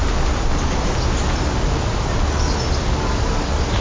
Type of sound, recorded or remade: recorded